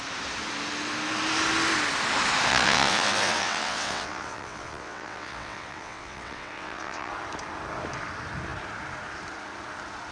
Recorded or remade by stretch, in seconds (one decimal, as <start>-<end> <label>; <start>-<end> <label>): 0.0-2.5 recorded; 2.5-7.1 remade; 7.1-10.1 recorded